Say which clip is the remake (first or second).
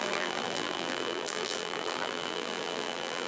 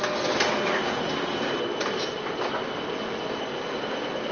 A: first